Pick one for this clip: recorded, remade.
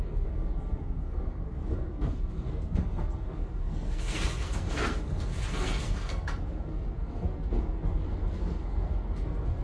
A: remade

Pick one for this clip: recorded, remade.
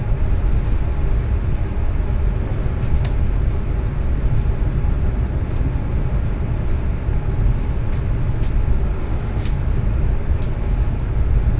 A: recorded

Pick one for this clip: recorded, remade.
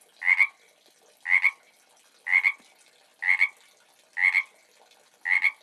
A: recorded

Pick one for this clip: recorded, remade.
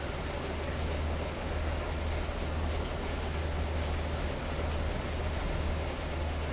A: recorded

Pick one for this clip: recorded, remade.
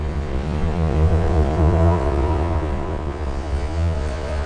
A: remade